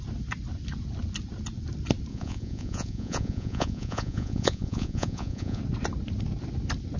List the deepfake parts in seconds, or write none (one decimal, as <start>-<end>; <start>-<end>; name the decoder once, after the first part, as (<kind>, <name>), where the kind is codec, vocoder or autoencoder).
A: 2.1-5.6 (vocoder, Vocos)